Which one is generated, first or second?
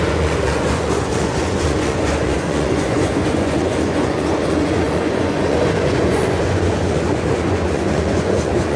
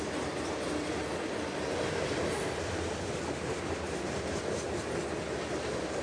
first